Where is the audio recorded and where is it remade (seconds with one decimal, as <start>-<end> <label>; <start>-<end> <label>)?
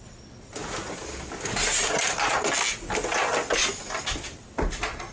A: 0.0-5.1 recorded